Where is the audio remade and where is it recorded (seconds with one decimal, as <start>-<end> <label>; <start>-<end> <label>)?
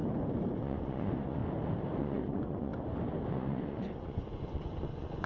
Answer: 0.0-0.6 recorded; 0.6-1.4 remade; 1.4-2.0 recorded; 2.0-2.7 remade; 2.7-3.3 recorded; 3.3-5.3 remade